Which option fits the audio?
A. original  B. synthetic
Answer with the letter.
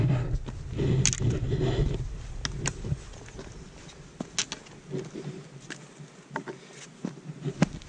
A